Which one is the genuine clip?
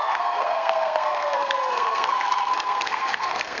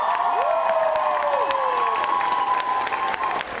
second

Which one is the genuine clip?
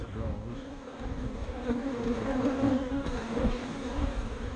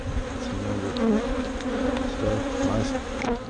second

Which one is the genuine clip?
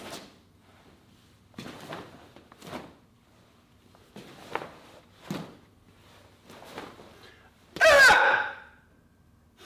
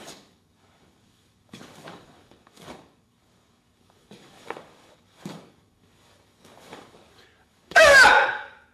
first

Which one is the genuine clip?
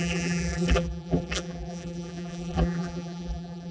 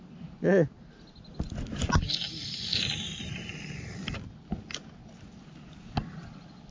second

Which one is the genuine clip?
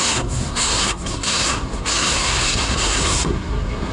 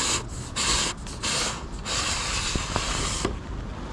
second